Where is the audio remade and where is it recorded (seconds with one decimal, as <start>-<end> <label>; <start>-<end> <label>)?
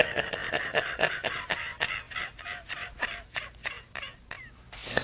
0.0-5.0 recorded